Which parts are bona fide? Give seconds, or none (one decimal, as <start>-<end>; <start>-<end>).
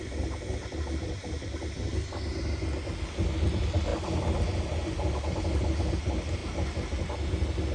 0.0-7.7